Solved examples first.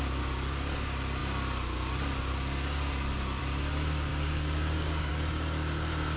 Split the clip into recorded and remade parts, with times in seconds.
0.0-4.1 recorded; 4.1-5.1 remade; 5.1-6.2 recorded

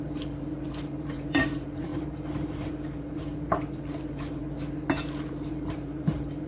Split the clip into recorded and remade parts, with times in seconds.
0.0-4.4 remade; 4.4-5.3 recorded; 5.3-6.5 remade

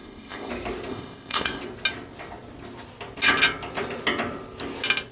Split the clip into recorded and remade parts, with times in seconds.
0.0-0.5 remade; 0.5-0.9 recorded; 0.9-1.6 remade; 1.6-5.1 recorded

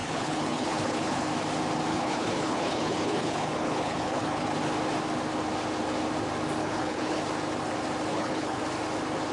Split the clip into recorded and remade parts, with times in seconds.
0.0-1.3 remade; 1.3-1.9 recorded; 1.9-4.5 remade; 4.5-6.6 recorded; 6.6-7.2 remade; 7.2-8.1 recorded; 8.1-8.6 remade; 8.6-9.3 recorded

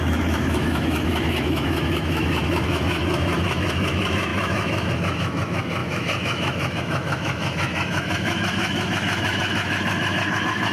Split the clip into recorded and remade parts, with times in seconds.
0.0-10.7 remade

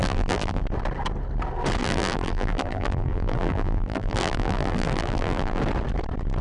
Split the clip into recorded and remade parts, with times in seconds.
0.0-0.6 remade; 0.6-1.8 recorded; 1.8-5.6 remade; 5.6-6.4 recorded